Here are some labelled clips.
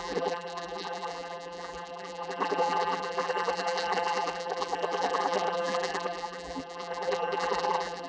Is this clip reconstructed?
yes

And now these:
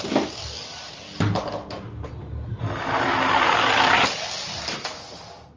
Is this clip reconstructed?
no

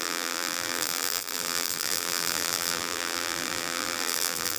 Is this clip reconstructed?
yes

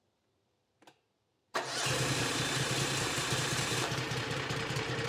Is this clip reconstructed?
yes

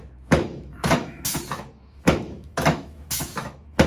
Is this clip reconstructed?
yes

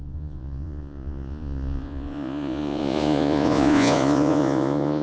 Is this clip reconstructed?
yes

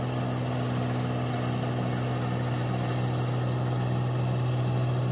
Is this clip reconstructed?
no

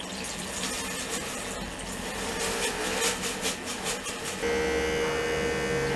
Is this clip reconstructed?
no